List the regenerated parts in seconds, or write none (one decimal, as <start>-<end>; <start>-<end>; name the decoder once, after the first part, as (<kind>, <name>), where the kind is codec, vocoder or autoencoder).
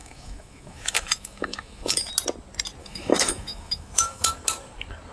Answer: 0.0-2.1 (autoencoder, DAC-VAE); 2.8-4.3